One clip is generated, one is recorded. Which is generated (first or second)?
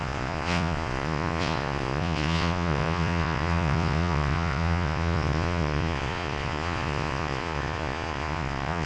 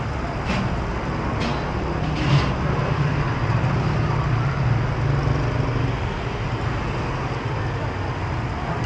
first